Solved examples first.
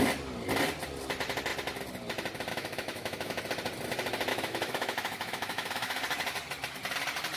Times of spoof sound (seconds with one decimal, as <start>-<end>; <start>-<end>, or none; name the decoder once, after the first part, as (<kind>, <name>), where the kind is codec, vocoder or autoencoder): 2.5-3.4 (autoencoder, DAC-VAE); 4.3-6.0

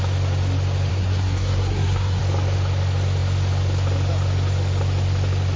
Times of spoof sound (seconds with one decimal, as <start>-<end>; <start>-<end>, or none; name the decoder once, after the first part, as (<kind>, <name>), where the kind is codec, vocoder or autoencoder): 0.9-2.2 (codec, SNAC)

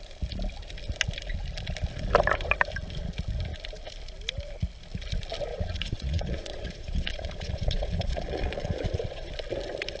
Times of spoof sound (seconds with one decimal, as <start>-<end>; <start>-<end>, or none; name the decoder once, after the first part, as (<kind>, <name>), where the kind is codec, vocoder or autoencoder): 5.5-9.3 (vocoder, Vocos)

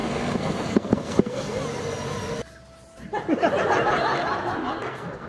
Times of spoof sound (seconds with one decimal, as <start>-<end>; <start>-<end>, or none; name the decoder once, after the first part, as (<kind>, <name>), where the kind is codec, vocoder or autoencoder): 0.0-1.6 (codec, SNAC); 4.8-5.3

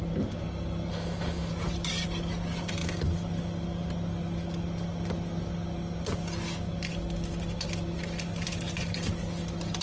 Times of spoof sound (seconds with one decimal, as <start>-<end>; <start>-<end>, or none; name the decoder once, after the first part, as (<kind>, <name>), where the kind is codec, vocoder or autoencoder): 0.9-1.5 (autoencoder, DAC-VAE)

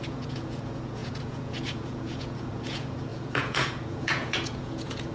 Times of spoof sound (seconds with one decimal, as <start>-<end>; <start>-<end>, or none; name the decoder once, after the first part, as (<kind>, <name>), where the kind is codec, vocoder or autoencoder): 0.0-5.1 (vocoder, Vocos)

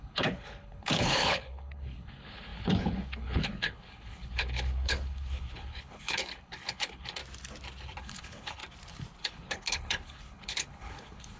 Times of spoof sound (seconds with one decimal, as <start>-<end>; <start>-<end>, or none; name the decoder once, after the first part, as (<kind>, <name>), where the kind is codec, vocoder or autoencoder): 0.0-7.2 (codec, HILCodec); 8.0-8.6; 9.2-11.4